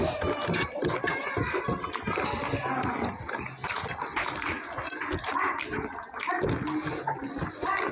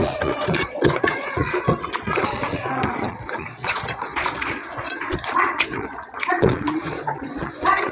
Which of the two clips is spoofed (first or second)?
second